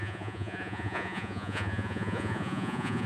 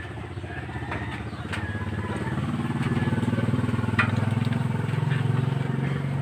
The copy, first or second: first